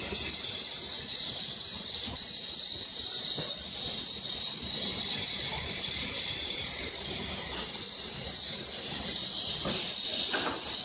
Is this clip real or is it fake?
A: real